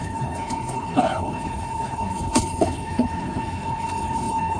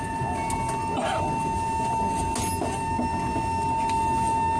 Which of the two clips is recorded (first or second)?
second